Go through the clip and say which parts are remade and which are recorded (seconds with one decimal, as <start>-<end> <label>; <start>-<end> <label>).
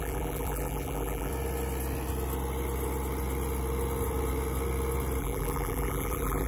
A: 0.0-1.3 remade; 1.3-5.2 recorded; 5.2-6.5 remade